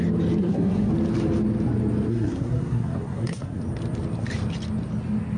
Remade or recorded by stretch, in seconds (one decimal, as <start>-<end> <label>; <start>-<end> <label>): 0.0-0.4 recorded; 0.4-0.9 remade; 0.9-2.1 recorded; 2.1-3.6 remade; 3.6-5.4 recorded